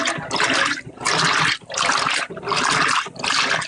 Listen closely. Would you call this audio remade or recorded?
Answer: remade